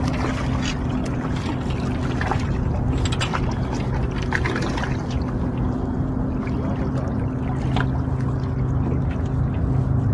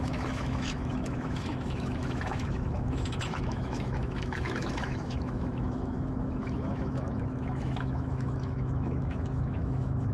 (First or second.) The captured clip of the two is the first